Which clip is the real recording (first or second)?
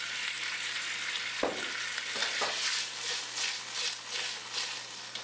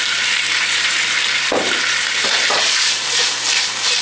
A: first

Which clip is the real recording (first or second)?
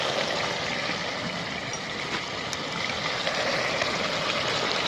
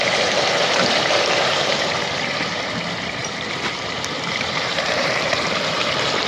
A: first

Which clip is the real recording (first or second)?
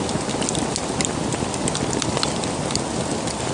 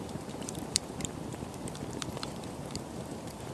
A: first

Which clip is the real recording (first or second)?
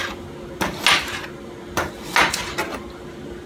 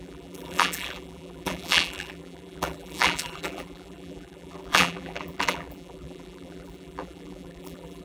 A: first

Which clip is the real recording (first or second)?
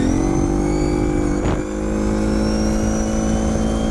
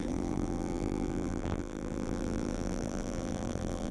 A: first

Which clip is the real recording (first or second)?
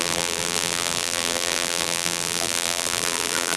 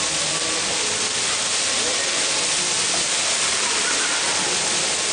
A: second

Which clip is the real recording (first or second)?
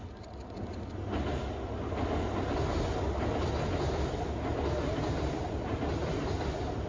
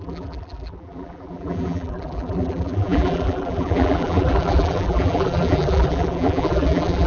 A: first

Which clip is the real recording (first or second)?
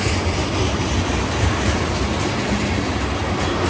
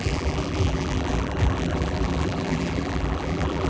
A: first